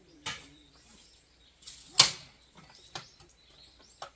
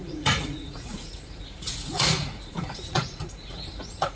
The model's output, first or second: second